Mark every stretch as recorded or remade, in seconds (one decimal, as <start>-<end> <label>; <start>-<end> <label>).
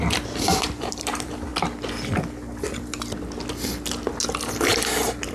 0.0-1.5 remade; 1.5-4.7 recorded; 4.7-5.3 remade